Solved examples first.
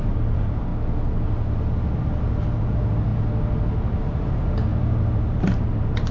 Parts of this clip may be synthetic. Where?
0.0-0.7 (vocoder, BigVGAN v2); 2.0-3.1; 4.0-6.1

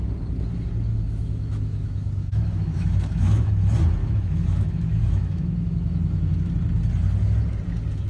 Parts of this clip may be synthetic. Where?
0.9-3.5 (autoencoder, DAC-VAE); 4.0-6.5

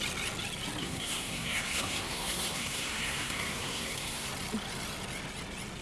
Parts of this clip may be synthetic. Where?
0.8-4.3 (codec, SNAC)

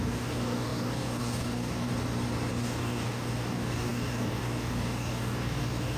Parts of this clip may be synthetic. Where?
0.0-1.9 (codec, DAC); 2.5-6.0

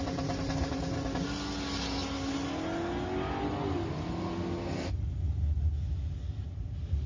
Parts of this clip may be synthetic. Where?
none

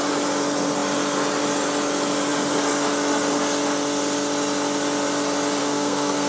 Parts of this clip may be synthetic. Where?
5.6-6.3 (codec, SNAC)